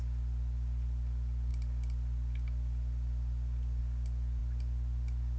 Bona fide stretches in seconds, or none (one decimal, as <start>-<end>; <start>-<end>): 0.0-5.4